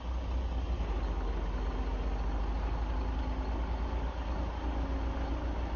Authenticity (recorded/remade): recorded